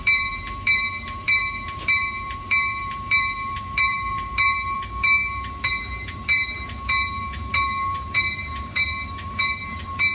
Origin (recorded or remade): remade